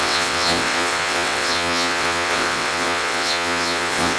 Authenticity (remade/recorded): remade